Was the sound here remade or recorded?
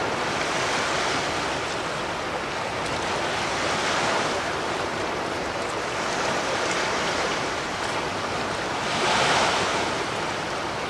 recorded